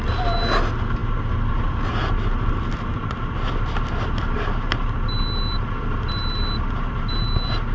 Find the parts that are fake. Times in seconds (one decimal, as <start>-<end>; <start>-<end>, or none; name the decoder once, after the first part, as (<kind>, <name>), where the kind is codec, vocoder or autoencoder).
none